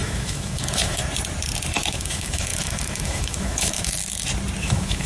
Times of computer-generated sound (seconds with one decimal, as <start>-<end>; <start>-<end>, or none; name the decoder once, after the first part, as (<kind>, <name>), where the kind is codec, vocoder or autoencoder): 0.0-1.0 (autoencoder, DAC-VAE); 1.9-4.0; 4.6-5.1